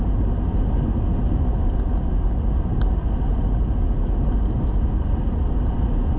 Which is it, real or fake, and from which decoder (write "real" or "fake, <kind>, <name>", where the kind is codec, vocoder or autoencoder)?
real